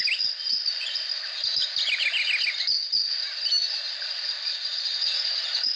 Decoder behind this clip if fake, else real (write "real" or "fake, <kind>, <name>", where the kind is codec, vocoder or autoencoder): real